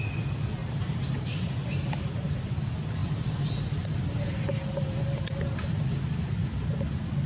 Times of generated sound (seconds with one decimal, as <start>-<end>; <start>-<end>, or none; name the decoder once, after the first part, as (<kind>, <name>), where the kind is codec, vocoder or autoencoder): 0.6-2.0 (vocoder, BigVGAN v2)